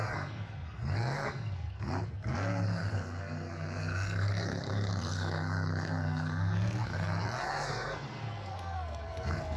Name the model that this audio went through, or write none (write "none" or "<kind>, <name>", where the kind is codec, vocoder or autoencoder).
codec, SNAC